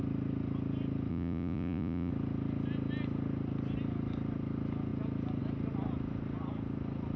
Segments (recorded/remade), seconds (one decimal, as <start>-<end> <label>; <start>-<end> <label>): 0.0-1.1 recorded; 1.1-2.1 remade; 2.1-7.2 recorded